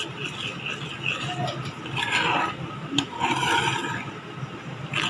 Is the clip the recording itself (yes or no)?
yes